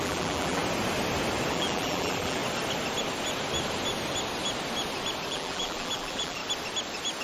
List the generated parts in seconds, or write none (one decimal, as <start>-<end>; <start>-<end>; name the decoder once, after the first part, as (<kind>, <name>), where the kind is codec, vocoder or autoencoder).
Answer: 0.0-0.6 (vocoder, BigVGAN v2); 1.5-2.4; 5.3-6.4